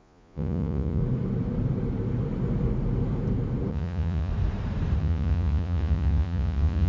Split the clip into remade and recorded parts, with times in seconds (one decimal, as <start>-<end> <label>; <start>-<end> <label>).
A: 0.0-1.0 remade; 1.0-3.7 recorded; 3.7-4.3 remade; 4.3-5.0 recorded; 5.0-6.9 remade